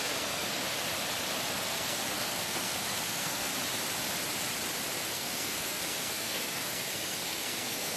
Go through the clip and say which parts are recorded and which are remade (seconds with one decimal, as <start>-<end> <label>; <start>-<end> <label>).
0.0-0.6 remade; 0.6-1.5 recorded; 1.5-3.5 remade; 3.5-5.1 recorded; 5.1-8.0 remade